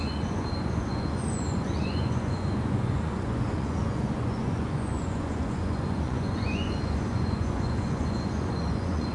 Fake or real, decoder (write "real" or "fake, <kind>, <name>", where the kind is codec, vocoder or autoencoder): fake, vocoder, Vocos